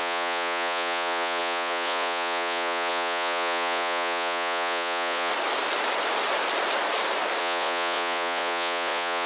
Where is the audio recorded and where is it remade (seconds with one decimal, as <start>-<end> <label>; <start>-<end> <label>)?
0.0-5.3 remade; 5.3-7.4 recorded; 7.4-9.3 remade